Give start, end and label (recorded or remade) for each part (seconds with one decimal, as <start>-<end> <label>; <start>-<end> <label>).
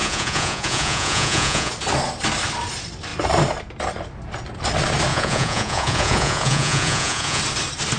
0.0-1.7 remade; 1.7-5.1 recorded; 5.1-7.4 remade; 7.4-8.0 recorded